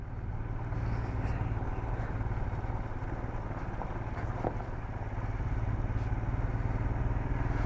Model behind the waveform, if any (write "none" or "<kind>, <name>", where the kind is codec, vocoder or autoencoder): none